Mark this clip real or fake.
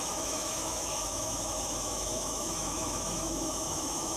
fake